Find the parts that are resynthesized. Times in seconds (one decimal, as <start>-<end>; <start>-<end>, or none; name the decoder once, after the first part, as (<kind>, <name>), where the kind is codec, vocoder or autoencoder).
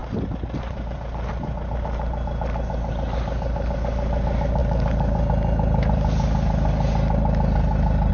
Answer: none